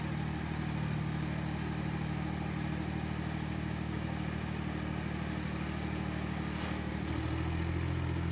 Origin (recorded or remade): recorded